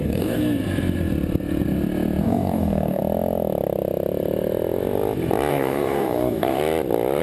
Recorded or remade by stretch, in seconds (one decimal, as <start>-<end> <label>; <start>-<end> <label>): 0.0-0.4 remade; 0.4-2.2 recorded; 2.2-3.0 remade; 3.0-5.5 recorded; 5.5-6.6 remade; 6.6-7.2 recorded